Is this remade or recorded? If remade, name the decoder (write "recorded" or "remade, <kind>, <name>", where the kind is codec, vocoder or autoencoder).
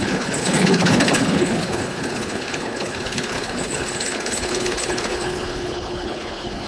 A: remade, codec, HILCodec